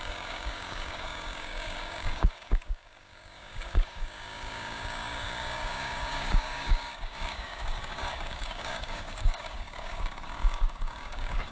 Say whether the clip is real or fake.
fake